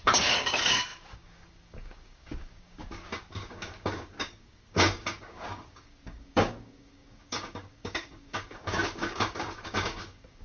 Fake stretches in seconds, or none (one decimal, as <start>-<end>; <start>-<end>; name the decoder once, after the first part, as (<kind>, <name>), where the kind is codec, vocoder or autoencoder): 0.0-10.4 (codec, DAC)